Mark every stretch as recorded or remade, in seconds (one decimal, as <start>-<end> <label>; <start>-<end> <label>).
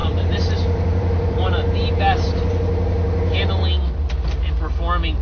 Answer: 0.0-1.7 remade; 1.7-5.2 recorded